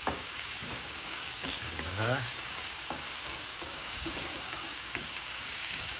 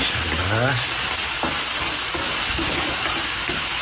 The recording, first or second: second